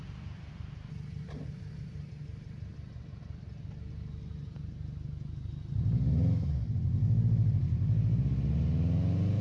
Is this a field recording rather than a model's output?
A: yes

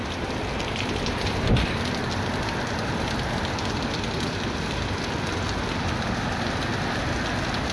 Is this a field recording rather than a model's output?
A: yes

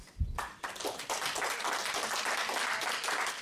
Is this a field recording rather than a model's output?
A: yes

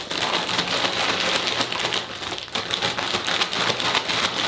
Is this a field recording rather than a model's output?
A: yes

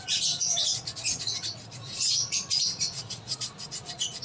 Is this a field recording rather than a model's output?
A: no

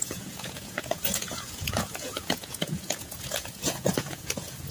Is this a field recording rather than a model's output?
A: no